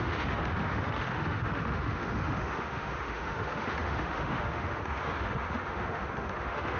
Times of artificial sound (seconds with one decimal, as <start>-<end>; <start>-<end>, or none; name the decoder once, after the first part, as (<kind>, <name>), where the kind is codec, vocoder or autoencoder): 0.0-6.8 (autoencoder, DAC-VAE)

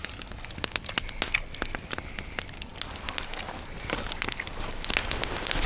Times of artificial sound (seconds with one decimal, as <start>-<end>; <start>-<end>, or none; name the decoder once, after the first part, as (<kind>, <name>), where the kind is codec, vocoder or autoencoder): none

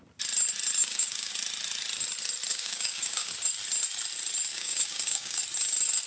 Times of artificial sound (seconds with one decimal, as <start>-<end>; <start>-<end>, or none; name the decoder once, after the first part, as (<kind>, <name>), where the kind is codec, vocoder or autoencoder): 0.8-1.3 (codec, DAC); 2.5-3.3; 4.5-5.4